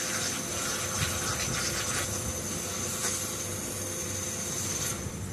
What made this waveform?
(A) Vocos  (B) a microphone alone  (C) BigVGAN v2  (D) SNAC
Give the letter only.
B